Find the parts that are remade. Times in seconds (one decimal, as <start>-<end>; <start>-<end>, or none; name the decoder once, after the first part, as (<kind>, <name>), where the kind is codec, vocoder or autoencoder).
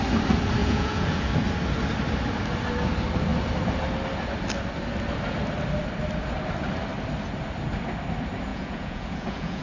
0.6-1.3 (vocoder, Vocos); 8.5-9.6